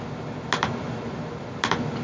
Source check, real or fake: real